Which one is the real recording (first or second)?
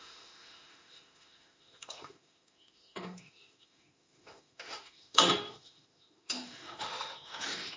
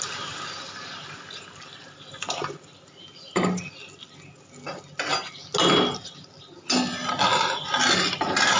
second